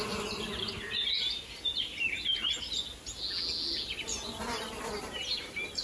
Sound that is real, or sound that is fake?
real